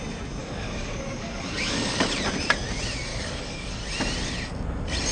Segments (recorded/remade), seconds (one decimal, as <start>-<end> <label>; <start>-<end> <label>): 0.0-0.4 recorded; 0.4-2.0 remade; 2.0-3.1 recorded; 3.1-3.8 remade; 3.8-5.1 recorded